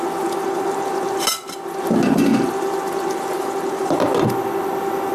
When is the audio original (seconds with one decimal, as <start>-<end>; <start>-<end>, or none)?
0.0-5.1